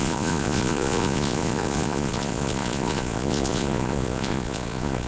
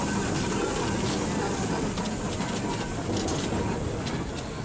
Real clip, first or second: second